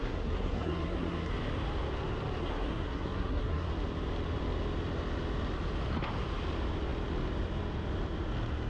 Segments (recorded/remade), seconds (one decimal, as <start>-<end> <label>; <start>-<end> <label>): 0.0-1.3 remade; 1.3-2.4 recorded; 2.4-3.7 remade; 3.7-8.7 recorded